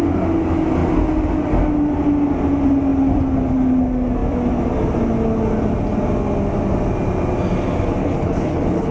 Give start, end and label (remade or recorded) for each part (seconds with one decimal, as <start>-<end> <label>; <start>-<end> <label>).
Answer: 0.0-8.0 recorded; 8.0-8.9 remade